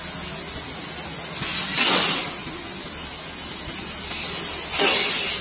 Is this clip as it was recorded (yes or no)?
yes